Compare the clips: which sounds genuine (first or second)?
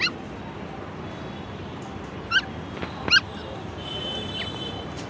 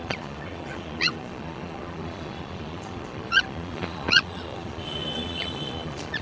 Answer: first